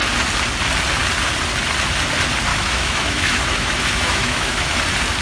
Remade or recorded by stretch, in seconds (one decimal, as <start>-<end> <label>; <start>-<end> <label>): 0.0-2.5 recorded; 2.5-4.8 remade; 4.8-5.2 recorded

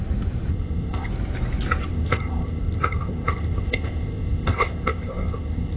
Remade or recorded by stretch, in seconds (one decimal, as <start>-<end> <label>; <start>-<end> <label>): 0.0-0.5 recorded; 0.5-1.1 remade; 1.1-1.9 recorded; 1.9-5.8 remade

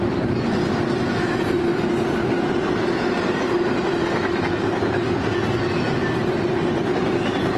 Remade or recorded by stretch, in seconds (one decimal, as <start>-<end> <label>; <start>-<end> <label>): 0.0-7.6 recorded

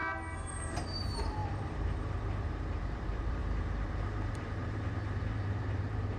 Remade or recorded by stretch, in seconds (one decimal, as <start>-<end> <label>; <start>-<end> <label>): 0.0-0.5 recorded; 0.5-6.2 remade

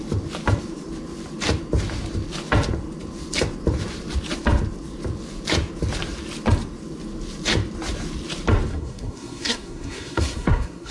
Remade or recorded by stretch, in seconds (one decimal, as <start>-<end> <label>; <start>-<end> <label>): 0.0-8.7 recorded; 8.7-10.9 remade

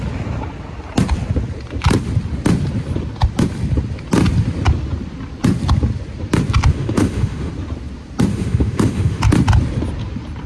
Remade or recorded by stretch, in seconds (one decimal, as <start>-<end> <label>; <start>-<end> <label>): 0.0-6.7 recorded; 6.7-7.5 remade; 7.5-8.3 recorded; 8.3-9.2 remade; 9.2-10.5 recorded

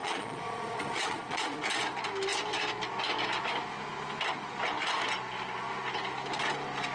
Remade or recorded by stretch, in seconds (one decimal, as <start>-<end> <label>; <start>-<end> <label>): 0.0-1.6 remade; 1.6-6.9 recorded